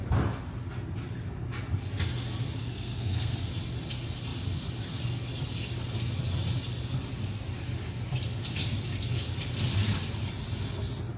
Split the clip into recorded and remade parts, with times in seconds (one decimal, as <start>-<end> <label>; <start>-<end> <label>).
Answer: 0.0-2.6 recorded; 2.6-3.5 remade; 3.5-11.2 recorded